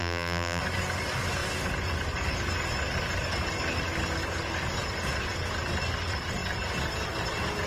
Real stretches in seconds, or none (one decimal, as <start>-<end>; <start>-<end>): 0.6-7.7

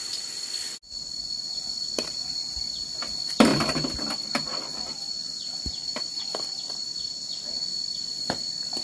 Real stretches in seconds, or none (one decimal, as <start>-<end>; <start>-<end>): 0.0-3.5; 7.5-7.9